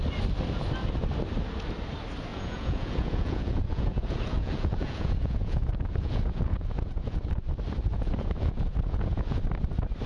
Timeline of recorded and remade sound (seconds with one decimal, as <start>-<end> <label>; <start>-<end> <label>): 0.0-2.3 recorded; 2.3-7.2 remade; 7.2-7.9 recorded; 7.9-9.4 remade; 9.4-10.1 recorded

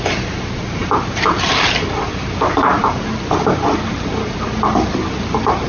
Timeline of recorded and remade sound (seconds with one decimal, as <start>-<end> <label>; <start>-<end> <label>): 0.0-5.7 recorded

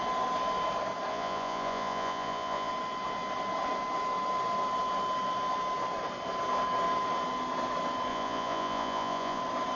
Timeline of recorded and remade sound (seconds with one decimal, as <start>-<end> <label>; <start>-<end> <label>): 0.0-1.1 recorded; 1.1-2.7 remade; 2.7-8.1 recorded; 8.1-9.4 remade; 9.4-9.8 recorded

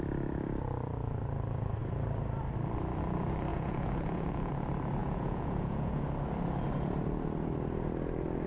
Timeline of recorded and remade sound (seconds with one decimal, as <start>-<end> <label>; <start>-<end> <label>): 0.0-3.5 recorded; 3.5-4.5 remade; 4.5-5.0 recorded; 5.0-6.0 remade; 6.0-8.5 recorded

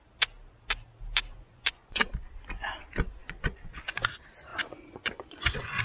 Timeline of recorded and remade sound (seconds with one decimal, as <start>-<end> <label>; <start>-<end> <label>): 0.0-1.3 recorded; 1.3-2.1 remade; 2.1-3.2 recorded; 3.2-3.8 remade; 3.8-4.5 recorded; 4.5-5.8 remade

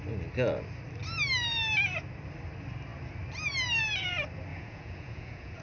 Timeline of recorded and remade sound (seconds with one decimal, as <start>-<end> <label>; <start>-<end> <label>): 0.0-4.5 recorded; 4.5-5.6 remade

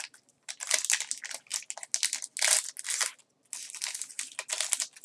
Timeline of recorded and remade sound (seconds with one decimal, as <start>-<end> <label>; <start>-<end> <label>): 0.0-5.0 recorded

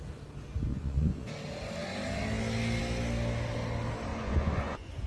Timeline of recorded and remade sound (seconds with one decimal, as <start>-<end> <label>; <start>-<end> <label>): 0.0-0.7 recorded; 0.7-1.3 remade; 1.3-4.1 recorded; 4.1-5.1 remade